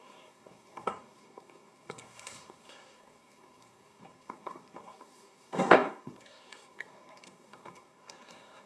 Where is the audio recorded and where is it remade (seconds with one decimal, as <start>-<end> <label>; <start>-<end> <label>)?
0.0-8.7 remade